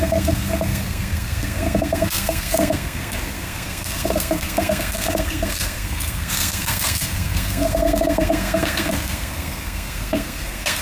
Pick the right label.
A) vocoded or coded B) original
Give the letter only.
A